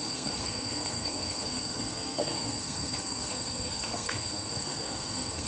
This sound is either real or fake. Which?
fake